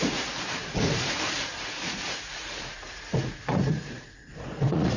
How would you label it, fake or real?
fake